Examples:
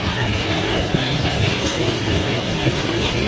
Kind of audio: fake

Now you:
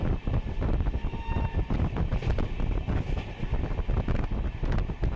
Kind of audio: real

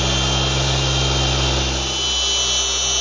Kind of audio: real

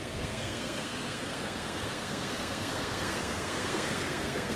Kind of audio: fake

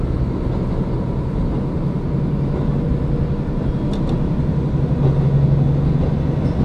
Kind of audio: real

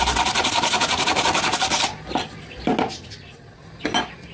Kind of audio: real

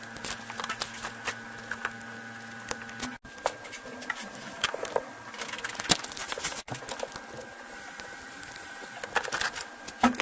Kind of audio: real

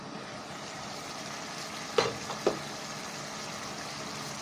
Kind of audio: real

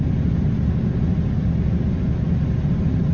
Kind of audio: real